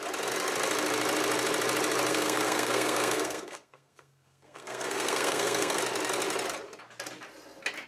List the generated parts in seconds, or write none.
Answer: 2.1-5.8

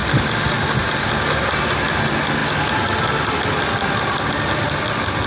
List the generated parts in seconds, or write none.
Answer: none

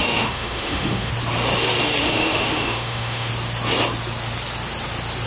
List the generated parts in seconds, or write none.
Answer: 0.0-1.1; 2.0-3.3

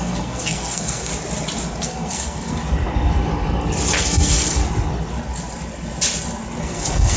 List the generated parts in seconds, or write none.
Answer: 0.0-1.1; 1.8-2.6; 3.9-4.6; 6.6-7.2

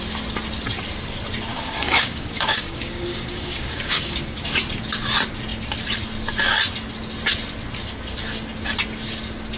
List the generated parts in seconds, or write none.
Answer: 1.5-4.4

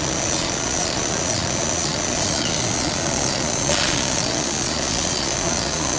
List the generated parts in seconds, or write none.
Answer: 0.0-6.0